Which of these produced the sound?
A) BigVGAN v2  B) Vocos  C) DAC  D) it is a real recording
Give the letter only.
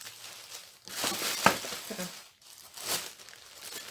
D